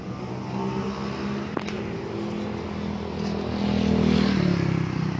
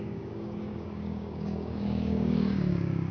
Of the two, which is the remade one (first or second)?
second